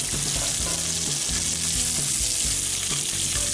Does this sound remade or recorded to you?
recorded